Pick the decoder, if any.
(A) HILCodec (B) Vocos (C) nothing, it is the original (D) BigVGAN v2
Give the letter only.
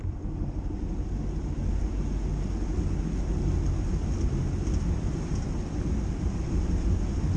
C